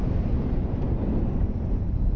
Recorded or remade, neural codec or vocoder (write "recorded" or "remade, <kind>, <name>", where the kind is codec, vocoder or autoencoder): remade, vocoder, BigVGAN v2